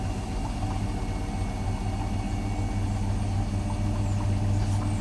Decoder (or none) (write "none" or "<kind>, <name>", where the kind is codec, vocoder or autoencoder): none